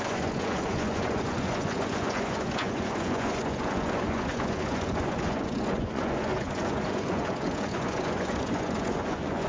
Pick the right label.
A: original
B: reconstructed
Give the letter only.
B